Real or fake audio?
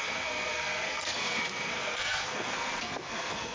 fake